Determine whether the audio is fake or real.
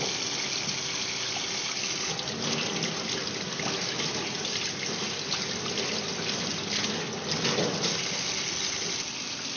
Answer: real